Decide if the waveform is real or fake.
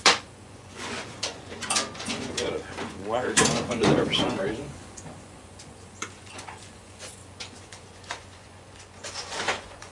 fake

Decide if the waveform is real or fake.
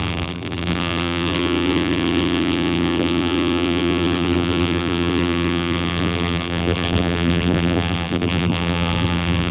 fake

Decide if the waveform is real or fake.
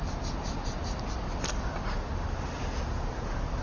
real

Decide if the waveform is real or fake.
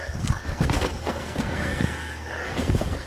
fake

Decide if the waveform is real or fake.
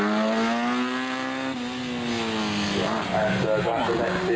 real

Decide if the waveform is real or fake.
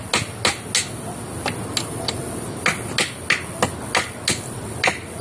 real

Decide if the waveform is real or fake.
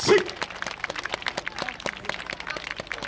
real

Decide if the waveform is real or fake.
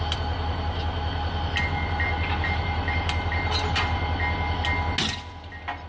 real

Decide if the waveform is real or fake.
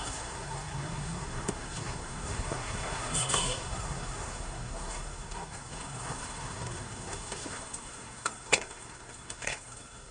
fake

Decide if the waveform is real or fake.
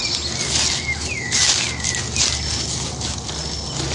real